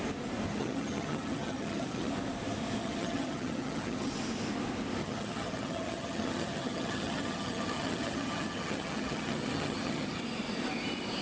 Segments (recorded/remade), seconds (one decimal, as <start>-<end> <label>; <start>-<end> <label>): 0.0-0.5 recorded; 0.5-2.1 remade; 2.1-2.8 recorded; 2.8-4.1 remade; 4.1-5.0 recorded; 5.0-10.2 remade; 10.2-11.2 recorded